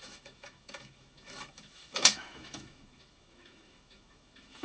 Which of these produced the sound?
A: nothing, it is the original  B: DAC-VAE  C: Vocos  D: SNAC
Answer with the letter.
B